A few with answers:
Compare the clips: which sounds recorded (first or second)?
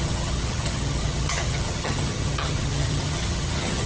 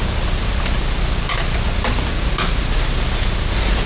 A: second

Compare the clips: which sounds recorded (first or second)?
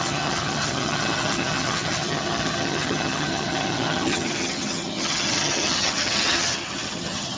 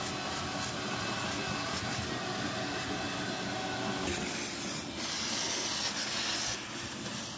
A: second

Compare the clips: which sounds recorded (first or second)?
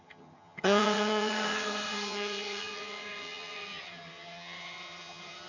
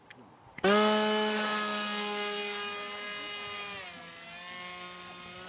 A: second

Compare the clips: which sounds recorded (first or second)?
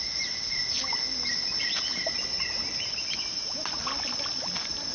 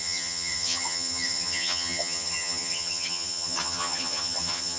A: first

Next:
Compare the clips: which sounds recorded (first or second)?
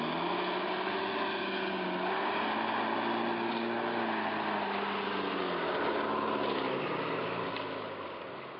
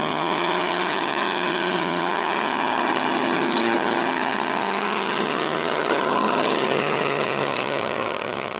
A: first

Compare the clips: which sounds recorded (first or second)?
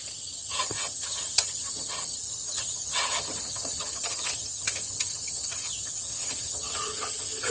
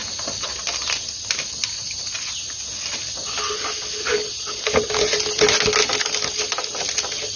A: second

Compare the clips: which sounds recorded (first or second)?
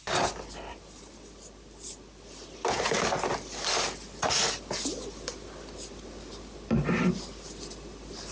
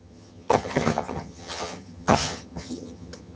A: first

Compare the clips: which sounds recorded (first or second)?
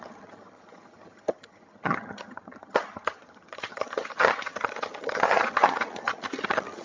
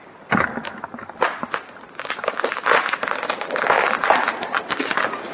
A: second